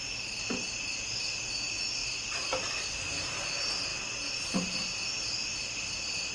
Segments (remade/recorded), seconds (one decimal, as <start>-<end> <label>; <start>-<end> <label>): 0.0-6.3 recorded